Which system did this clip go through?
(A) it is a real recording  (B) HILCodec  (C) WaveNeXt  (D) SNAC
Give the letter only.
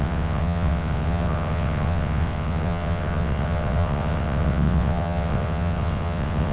C